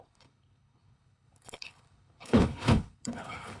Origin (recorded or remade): remade